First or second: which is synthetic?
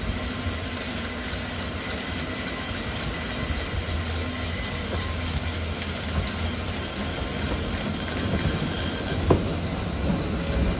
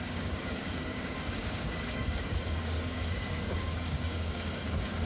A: second